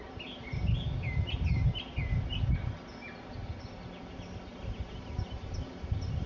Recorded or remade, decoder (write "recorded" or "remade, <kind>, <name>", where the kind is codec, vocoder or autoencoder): recorded